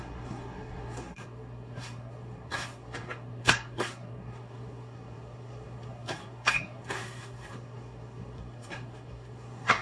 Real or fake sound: fake